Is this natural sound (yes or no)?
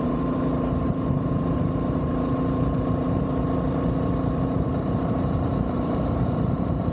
no